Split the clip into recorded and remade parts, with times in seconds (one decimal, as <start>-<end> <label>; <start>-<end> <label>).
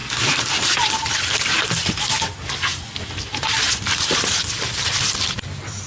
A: 0.0-1.7 recorded; 1.7-2.7 remade; 2.7-3.9 recorded; 3.9-5.9 remade